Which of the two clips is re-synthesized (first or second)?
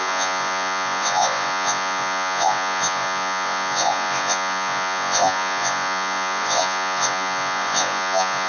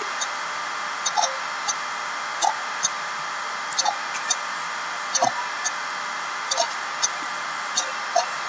first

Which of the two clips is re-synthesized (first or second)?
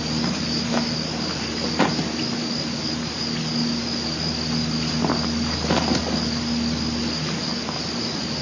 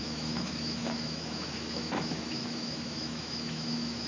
second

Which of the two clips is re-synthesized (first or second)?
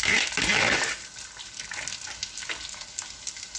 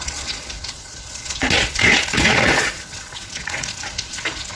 second